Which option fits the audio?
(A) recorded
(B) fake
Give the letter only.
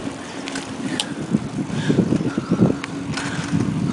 A